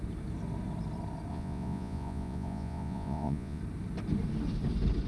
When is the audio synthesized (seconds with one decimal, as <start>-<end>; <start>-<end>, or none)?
1.3-3.6